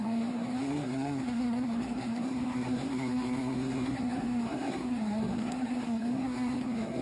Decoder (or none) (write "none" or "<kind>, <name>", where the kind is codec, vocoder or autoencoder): codec, SNAC